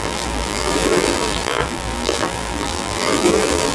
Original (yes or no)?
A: no